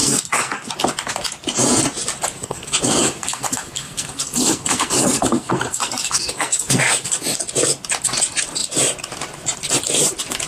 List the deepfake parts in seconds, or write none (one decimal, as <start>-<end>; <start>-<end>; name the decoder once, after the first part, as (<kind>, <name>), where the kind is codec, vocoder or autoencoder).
0.0-0.7 (codec, SNAC); 2.4-7.2